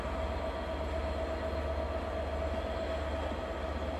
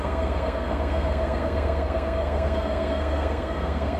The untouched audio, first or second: first